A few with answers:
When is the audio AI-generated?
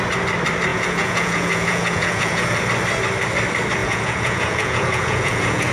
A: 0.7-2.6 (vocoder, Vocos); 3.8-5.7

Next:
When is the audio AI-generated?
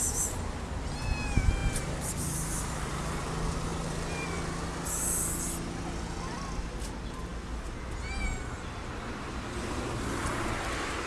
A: none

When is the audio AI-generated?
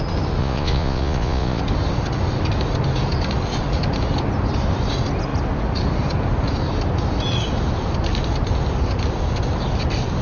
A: 0.4-1.6 (vocoder, Vocos)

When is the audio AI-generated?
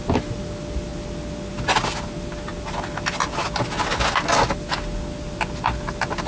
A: none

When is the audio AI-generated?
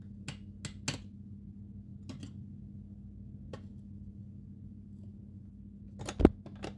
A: none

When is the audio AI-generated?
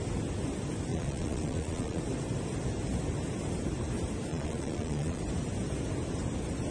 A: 0.9-2.0 (vocoder, Vocos); 4.3-5.2